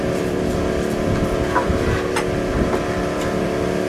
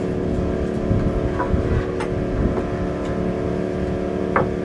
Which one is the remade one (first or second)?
first